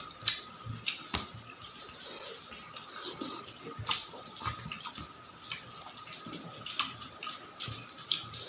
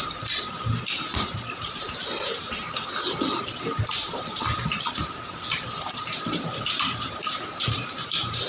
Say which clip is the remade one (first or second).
second